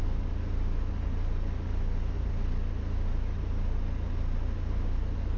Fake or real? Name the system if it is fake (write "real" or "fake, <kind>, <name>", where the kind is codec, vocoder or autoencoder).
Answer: real